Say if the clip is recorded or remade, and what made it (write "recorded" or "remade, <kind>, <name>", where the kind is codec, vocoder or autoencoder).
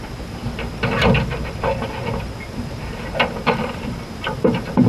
remade, vocoder, BigVGAN v2